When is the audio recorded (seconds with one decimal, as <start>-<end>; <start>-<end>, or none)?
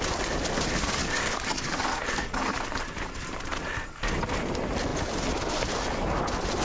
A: 0.0-1.0; 2.4-6.6